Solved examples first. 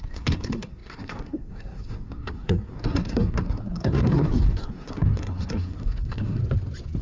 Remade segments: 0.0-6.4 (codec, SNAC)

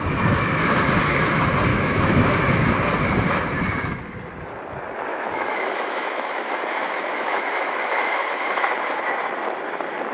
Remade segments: 1.7-2.7 (autoencoder, DAC-VAE); 5.1-9.0

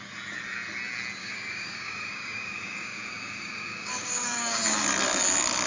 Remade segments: 1.2-4.6 (codec, DAC)

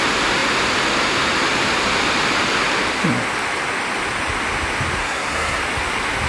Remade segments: 5.0-5.6 (codec, SNAC)

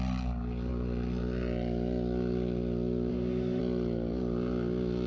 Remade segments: 3.1-3.6 (autoencoder, DAC-VAE)

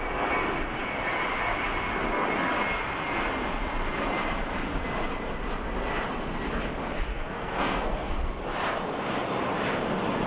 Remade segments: 7.1-8.4 (codec, SNAC)

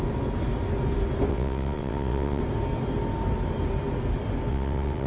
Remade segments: 1.3-2.4 (vocoder, WaveNeXt); 4.5-5.1

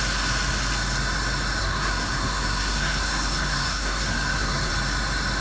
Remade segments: 1.6-4.7 (codec, SNAC)